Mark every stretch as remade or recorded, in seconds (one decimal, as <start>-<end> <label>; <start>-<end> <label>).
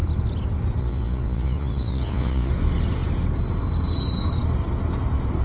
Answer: 0.0-0.8 recorded; 0.8-2.5 remade; 2.5-5.4 recorded